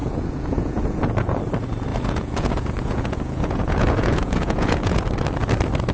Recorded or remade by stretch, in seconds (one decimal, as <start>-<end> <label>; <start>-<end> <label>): 0.0-1.4 remade; 1.4-1.9 recorded; 1.9-5.0 remade; 5.0-5.9 recorded